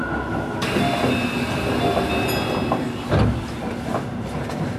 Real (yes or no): yes